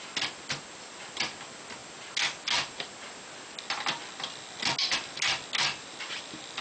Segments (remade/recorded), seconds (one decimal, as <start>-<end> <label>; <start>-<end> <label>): 0.0-6.6 recorded